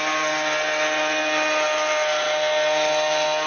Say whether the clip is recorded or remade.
recorded